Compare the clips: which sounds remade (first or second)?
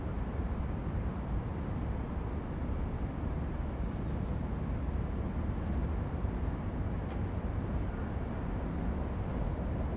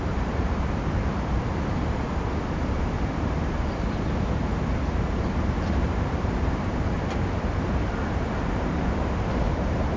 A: second